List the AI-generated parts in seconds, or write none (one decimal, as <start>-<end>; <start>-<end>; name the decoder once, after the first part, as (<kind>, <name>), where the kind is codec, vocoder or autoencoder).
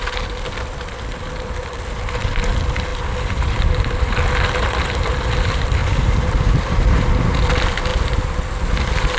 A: 5.8-7.1 (vocoder, BigVGAN v2)